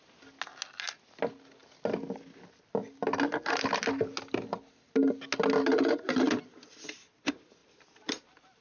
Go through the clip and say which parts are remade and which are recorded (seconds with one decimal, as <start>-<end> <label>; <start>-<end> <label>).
0.0-7.6 recorded; 7.6-8.6 remade